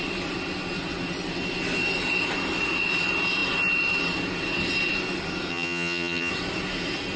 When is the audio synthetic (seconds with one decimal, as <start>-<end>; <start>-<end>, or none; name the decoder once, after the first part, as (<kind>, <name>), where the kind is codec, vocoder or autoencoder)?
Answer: 5.5-6.3 (vocoder, HiFi-GAN)

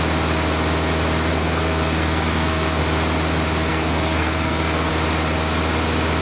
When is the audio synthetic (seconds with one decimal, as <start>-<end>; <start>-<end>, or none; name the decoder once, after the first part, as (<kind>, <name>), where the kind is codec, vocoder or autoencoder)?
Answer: 1.3-2.8 (codec, SNAC); 3.7-4.9

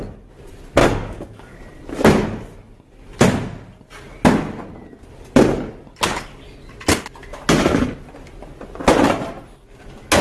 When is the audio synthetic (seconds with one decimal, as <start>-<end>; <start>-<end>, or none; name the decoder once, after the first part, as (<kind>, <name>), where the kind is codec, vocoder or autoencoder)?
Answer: 0.8-1.6 (codec, DAC)